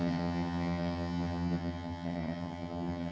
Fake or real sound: fake